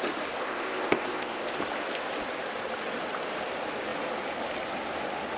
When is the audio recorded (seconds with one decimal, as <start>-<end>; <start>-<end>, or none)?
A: 0.0-0.4; 1.6-5.4